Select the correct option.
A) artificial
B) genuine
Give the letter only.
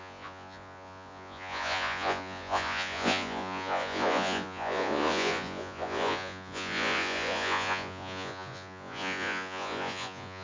A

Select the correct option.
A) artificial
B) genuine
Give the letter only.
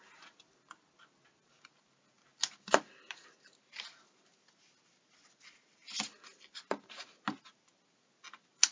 B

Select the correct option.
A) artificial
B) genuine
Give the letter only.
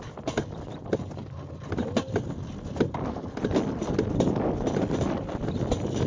B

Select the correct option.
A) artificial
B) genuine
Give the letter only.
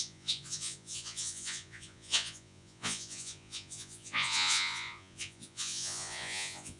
A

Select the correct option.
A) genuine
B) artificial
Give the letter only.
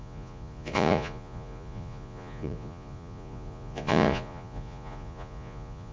B